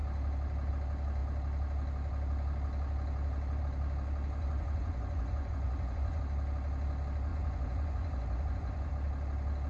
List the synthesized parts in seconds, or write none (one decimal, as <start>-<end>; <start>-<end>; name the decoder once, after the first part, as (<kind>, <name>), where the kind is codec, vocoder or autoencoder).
4.4-6.2 (vocoder, Vocos); 7.3-8.9